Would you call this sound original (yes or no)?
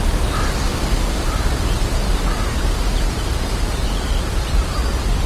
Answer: no